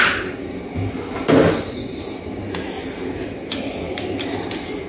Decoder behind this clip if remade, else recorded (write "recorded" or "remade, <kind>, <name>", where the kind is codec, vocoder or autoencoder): recorded